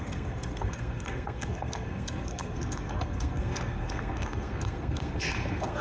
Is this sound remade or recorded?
remade